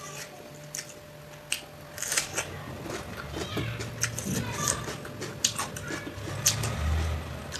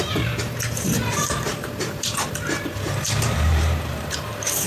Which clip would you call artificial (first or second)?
second